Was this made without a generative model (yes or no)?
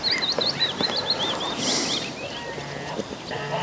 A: yes